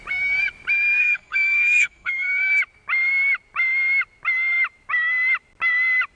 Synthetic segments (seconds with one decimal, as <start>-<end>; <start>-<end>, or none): 1.0-2.5